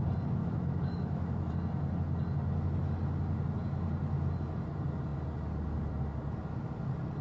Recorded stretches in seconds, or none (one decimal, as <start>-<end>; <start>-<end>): 0.0-0.4; 1.5-7.2